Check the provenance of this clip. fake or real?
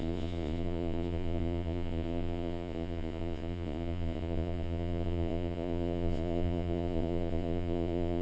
fake